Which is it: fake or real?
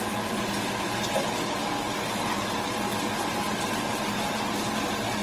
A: real